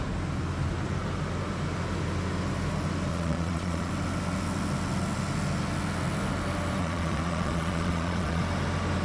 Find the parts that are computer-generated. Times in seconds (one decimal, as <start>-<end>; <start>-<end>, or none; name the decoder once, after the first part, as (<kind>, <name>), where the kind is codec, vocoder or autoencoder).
3.1-3.9 (vocoder, Vocos); 6.8-8.4